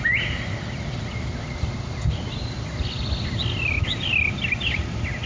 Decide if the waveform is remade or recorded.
recorded